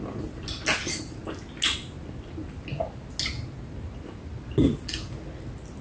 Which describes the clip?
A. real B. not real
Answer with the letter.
A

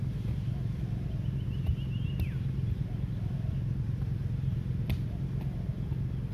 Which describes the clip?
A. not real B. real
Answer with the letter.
B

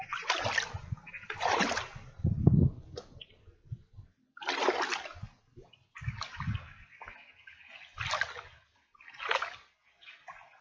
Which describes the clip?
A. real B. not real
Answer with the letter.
A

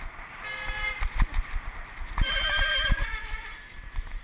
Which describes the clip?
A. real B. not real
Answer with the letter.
A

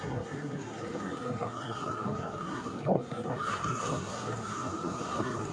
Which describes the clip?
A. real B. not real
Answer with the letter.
B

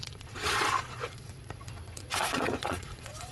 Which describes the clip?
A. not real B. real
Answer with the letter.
A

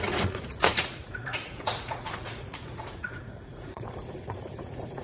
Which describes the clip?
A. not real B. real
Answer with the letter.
A